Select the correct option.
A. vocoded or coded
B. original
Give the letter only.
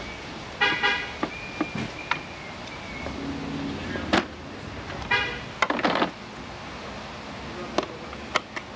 B